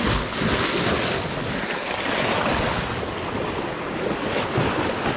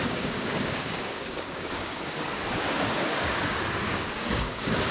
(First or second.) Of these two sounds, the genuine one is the first